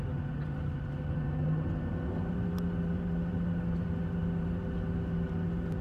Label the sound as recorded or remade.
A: recorded